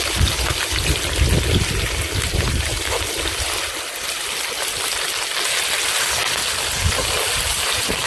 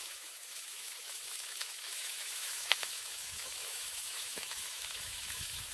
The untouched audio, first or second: first